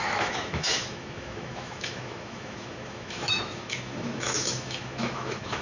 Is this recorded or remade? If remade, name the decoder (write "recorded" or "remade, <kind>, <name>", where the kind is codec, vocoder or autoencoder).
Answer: remade, autoencoder, DAC-VAE